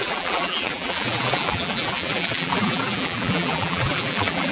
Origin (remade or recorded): remade